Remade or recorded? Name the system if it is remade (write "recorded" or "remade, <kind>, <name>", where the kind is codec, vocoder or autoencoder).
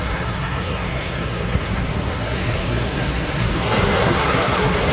remade, codec, SNAC